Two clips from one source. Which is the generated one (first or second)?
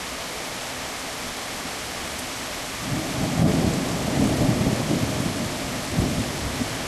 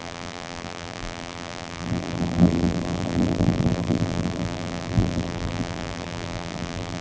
second